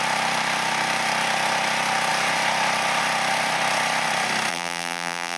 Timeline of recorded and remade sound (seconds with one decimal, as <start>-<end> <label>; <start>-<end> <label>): 0.0-4.5 recorded; 4.5-5.4 remade